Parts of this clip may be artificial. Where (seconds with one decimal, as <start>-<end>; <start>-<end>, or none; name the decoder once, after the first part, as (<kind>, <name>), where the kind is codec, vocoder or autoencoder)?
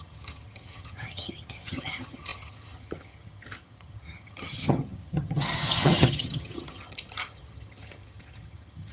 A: 0.0-8.9 (vocoder, HiFi-GAN)